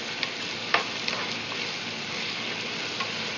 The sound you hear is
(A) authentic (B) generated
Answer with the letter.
A